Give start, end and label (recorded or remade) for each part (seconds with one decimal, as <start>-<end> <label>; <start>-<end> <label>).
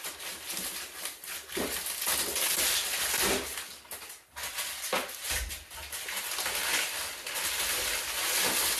0.0-8.8 recorded